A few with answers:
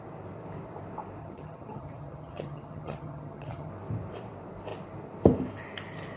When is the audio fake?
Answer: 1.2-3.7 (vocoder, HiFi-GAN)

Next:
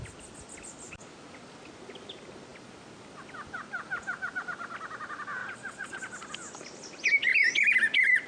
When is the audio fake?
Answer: 5.4-6.0 (vocoder, Vocos)

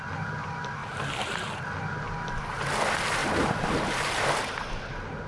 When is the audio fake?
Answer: 0.8-1.6 (vocoder, BigVGAN v2); 3.2-4.4

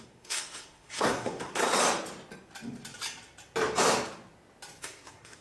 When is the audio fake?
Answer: 0.0-1.6 (codec, SNAC); 4.8-5.4

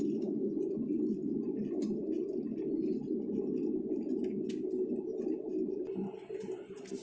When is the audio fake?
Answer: none

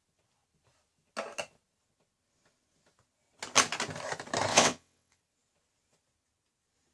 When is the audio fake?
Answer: 4.5-5.2 (vocoder, WaveNeXt)